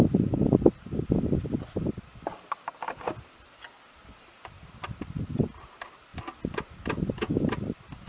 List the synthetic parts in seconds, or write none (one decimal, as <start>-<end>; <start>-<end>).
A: none